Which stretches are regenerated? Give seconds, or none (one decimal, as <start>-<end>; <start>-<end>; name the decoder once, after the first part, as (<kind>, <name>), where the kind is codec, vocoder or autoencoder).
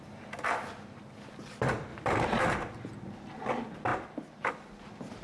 1.9-2.4 (vocoder, BigVGAN v2)